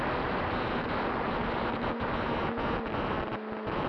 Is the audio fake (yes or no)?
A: no